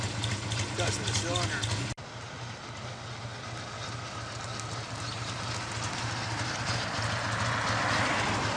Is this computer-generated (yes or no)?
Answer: no